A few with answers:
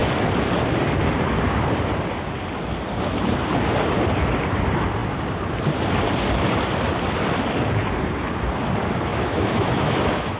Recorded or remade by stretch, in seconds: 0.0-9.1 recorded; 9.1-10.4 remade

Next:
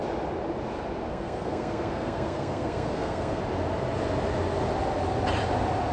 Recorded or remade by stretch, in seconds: 0.0-1.1 recorded; 1.1-3.4 remade; 3.4-5.9 recorded

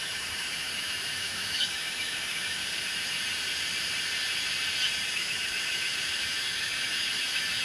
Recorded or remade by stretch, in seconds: 0.0-2.6 remade; 2.6-5.1 recorded; 5.1-7.6 remade

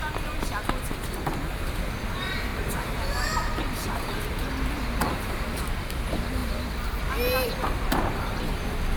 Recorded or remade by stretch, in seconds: 0.0-2.5 recorded; 2.5-4.4 remade; 4.4-5.0 recorded; 5.0-5.6 remade; 5.6-9.0 recorded

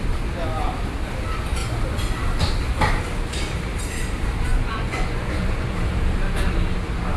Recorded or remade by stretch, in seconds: 0.0-4.5 recorded; 4.5-5.7 remade; 5.7-7.2 recorded

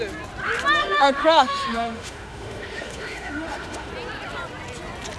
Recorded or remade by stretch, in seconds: 0.0-0.8 recorded; 0.8-3.9 remade; 3.9-5.2 recorded